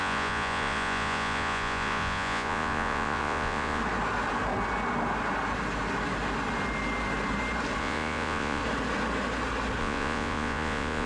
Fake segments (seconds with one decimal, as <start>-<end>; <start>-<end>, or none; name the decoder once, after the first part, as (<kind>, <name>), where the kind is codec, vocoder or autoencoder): 0.0-3.8 (vocoder, Vocos); 7.8-8.6; 9.8-11.1